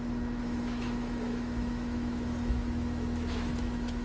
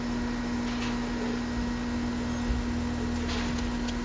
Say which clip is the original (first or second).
second